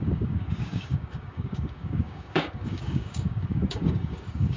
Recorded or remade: remade